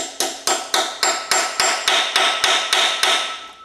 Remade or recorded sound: recorded